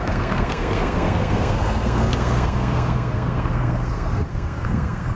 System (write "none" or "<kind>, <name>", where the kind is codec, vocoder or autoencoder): codec, SNAC